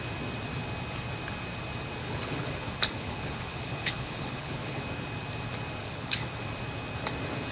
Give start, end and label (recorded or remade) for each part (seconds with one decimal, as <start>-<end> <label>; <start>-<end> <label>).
0.0-2.0 recorded; 2.0-4.8 remade; 4.8-5.8 recorded; 5.8-6.4 remade; 6.4-7.5 recorded